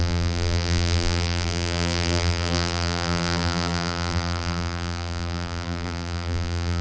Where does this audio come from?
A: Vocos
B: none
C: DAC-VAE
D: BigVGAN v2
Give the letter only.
D